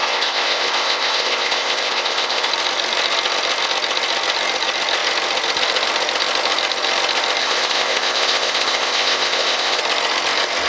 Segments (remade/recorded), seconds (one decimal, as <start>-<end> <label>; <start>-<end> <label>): 0.0-2.5 remade; 2.5-7.4 recorded; 7.4-9.8 remade; 9.8-10.7 recorded